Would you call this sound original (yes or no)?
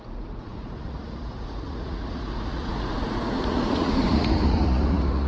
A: no